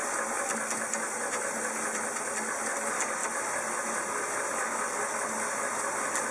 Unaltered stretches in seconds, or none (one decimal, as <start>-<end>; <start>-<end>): 0.0-6.3